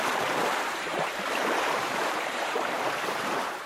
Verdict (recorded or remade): remade